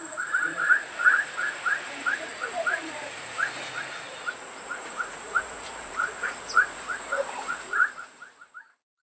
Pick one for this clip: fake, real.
fake